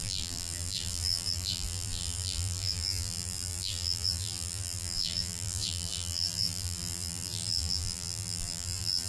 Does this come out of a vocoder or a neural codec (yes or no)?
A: yes